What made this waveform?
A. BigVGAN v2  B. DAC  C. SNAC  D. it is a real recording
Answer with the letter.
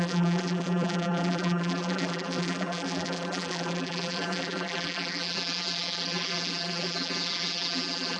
A